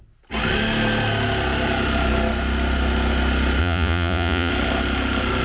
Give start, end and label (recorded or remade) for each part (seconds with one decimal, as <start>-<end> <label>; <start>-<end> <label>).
0.0-3.6 recorded; 3.6-4.5 remade; 4.5-5.4 recorded

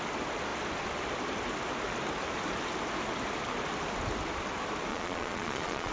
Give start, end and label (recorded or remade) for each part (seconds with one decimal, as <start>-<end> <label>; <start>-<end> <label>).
0.0-4.9 recorded; 4.9-5.9 remade

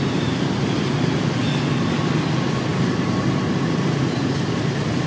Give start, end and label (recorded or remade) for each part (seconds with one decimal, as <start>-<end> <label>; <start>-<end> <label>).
0.0-5.1 recorded

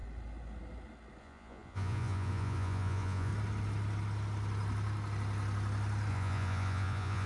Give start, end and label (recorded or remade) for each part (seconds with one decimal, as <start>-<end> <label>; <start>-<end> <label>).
0.0-1.2 recorded; 1.2-3.3 remade; 3.3-6.1 recorded; 6.1-7.3 remade

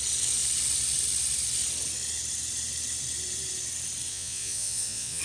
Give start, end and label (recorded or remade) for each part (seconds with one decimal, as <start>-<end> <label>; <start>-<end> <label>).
0.0-4.1 recorded; 4.1-5.2 remade

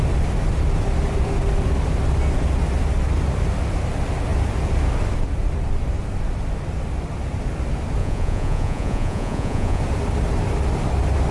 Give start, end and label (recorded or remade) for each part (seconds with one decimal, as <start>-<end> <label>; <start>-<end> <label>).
0.0-8.0 recorded; 8.0-9.8 remade; 9.8-11.3 recorded

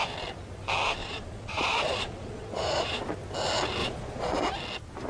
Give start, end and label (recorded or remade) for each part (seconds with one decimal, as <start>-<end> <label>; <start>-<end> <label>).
0.0-1.0 recorded; 1.0-3.1 remade; 3.1-3.8 recorded; 3.8-4.4 remade; 4.4-5.1 recorded

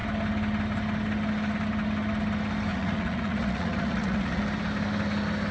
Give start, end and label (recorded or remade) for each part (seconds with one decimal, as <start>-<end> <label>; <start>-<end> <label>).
0.0-2.7 recorded; 2.7-4.4 remade; 4.4-5.5 recorded